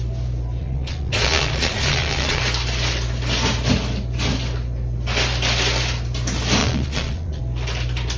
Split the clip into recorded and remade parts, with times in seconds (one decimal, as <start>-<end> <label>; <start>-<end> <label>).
0.0-0.6 recorded; 0.6-2.4 remade; 2.4-6.6 recorded; 6.6-7.4 remade; 7.4-8.2 recorded

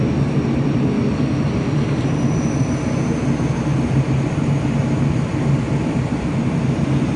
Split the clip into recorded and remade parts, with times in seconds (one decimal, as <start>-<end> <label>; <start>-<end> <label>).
0.0-7.2 recorded

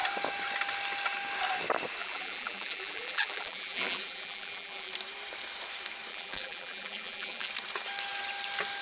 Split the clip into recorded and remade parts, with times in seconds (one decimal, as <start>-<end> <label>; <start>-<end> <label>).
0.0-2.0 recorded; 2.0-4.9 remade; 4.9-6.1 recorded; 6.1-7.5 remade; 7.5-8.8 recorded

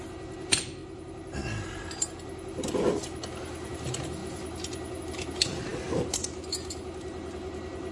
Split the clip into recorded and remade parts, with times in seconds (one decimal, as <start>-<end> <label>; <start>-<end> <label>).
0.0-7.9 recorded

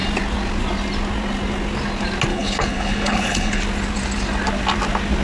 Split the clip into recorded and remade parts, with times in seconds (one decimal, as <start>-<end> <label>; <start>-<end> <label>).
0.0-2.3 recorded; 2.3-3.6 remade; 3.6-5.2 recorded

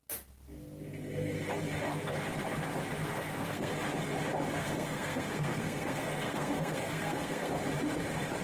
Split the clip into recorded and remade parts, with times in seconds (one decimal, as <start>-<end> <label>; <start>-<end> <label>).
0.0-3.0 recorded; 3.0-3.7 remade; 3.7-4.6 recorded; 4.6-7.5 remade; 7.5-8.4 recorded

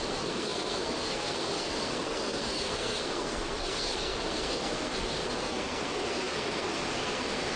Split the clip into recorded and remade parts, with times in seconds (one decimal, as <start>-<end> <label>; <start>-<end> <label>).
0.0-7.6 remade

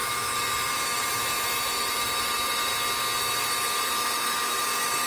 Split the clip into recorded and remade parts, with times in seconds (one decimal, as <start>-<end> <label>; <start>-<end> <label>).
0.0-2.7 remade; 2.7-3.2 recorded; 3.2-5.1 remade